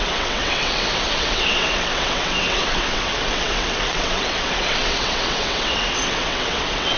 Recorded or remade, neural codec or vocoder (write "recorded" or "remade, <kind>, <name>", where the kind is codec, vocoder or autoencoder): remade, vocoder, WaveNeXt